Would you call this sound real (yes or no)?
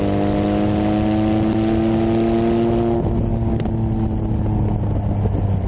yes